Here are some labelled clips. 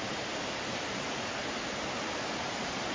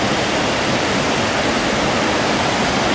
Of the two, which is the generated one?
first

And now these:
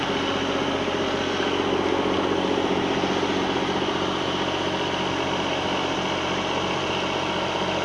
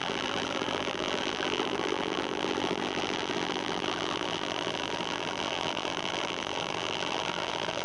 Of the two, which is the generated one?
second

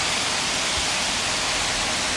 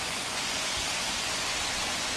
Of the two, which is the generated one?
second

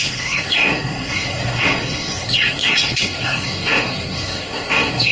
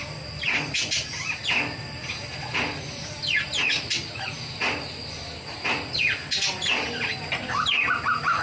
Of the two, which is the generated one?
first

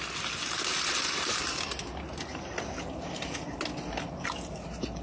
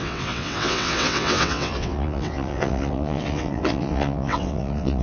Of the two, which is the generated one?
second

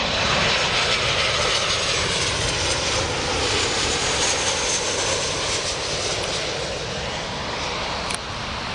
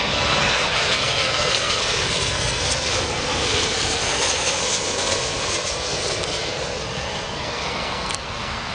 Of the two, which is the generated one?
second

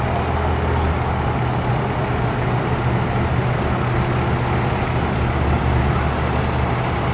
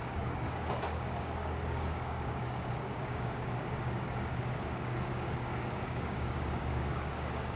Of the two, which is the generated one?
second